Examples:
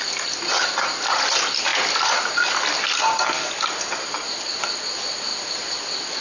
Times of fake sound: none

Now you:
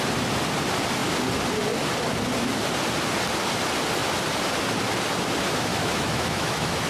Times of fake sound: 5.7-6.9 (autoencoder, DAC-VAE)